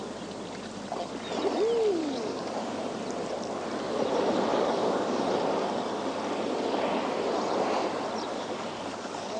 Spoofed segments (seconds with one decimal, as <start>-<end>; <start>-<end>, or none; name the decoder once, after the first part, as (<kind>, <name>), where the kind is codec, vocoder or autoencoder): 2.0-2.8 (codec, DAC); 4.5-5.2; 8.3-9.4